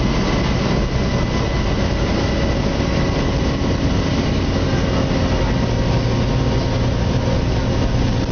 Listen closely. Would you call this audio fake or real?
real